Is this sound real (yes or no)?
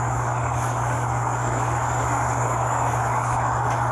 no